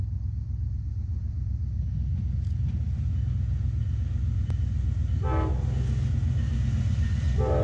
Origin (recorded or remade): recorded